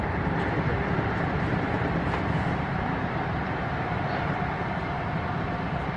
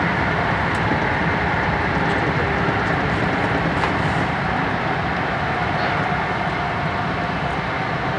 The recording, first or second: second